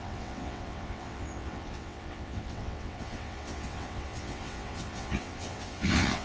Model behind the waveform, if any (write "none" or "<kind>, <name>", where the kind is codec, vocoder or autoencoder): vocoder, WaveNeXt